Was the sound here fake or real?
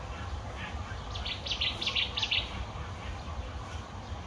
real